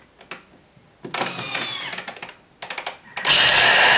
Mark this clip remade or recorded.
recorded